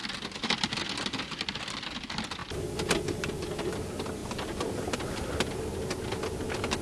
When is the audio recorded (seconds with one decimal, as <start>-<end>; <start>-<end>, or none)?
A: 0.0-6.8